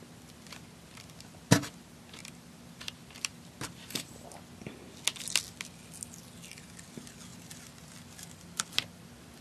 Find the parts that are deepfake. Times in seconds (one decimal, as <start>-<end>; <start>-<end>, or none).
2.2-4.1; 7.3-9.4